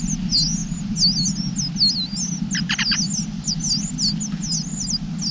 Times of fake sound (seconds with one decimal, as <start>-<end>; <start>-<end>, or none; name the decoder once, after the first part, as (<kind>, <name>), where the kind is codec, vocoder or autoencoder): none